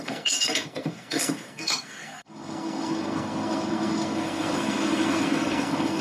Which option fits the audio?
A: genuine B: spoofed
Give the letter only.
B